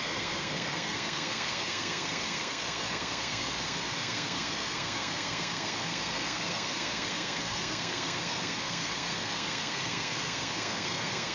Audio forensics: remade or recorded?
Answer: remade